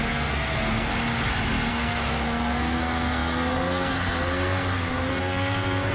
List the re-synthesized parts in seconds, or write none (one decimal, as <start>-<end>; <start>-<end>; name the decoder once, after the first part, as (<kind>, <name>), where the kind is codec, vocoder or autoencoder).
0.0-0.9 (codec, SNAC); 1.7-5.9